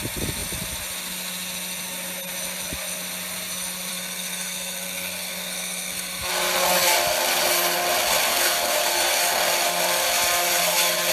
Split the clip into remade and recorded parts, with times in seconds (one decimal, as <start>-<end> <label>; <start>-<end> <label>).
0.0-3.9 recorded; 3.9-6.3 remade; 6.3-8.3 recorded; 8.3-9.2 remade; 9.2-11.1 recorded